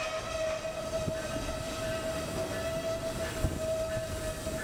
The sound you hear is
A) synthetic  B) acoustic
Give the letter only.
B